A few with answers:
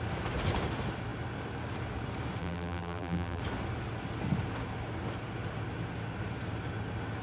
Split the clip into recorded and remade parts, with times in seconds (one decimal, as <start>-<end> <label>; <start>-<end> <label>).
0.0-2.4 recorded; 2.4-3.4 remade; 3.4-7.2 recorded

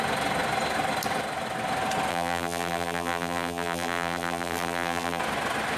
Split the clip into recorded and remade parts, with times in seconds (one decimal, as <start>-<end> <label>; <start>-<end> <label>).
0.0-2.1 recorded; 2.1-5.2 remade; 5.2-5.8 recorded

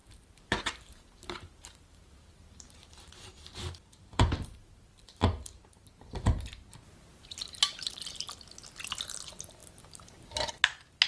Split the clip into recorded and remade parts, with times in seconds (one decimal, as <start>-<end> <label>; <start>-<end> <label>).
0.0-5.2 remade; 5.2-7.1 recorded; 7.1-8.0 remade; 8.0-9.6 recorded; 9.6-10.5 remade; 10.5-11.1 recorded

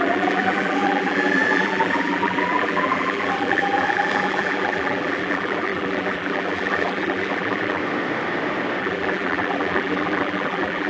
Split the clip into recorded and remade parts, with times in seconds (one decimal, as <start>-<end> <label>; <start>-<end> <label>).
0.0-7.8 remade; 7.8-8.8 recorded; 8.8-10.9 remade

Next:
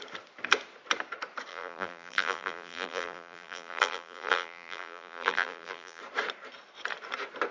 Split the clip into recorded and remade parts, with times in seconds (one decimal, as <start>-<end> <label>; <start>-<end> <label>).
0.0-1.5 recorded; 1.5-6.0 remade; 6.0-7.5 recorded

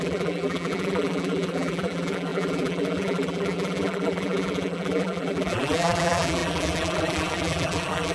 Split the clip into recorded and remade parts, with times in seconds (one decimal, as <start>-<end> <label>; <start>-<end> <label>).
0.0-8.1 remade

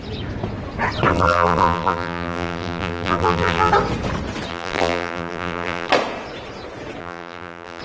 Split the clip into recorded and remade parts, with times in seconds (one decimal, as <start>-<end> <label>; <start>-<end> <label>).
0.0-1.1 recorded; 1.1-3.7 remade; 3.7-4.5 recorded; 4.5-5.9 remade; 5.9-7.0 recorded; 7.0-7.8 remade